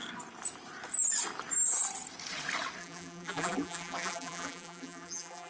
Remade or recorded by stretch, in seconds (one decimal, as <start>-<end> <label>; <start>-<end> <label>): 0.0-2.8 recorded; 2.8-5.5 remade